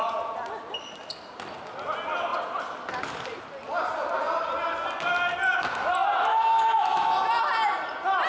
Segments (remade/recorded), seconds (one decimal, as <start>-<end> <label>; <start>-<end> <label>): 0.0-6.3 recorded; 6.3-7.1 remade; 7.1-8.3 recorded